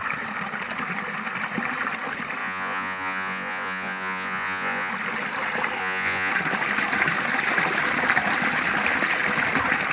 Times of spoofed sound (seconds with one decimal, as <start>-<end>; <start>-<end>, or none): 2.4-4.9; 5.8-6.3